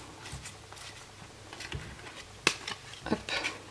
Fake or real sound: real